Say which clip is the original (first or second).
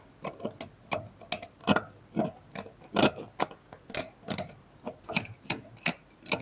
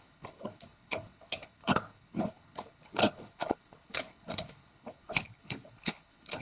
first